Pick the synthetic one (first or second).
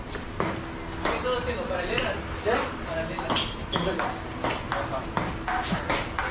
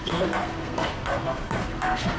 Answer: second